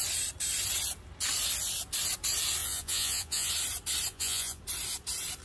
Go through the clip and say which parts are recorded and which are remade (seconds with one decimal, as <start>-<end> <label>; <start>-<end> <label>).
0.0-2.6 recorded; 2.6-3.5 remade; 3.5-4.1 recorded; 4.1-4.6 remade; 4.6-5.4 recorded